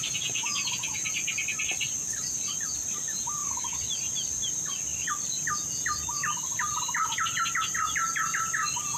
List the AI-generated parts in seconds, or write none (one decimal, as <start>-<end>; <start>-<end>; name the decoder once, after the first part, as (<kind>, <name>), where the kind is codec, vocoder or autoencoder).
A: none